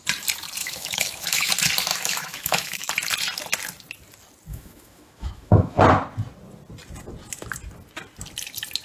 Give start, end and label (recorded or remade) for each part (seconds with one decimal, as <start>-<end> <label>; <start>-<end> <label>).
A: 0.0-0.6 recorded; 0.6-1.5 remade; 1.5-1.9 recorded; 1.9-2.9 remade; 2.9-4.5 recorded; 4.5-5.8 remade; 5.8-8.8 recorded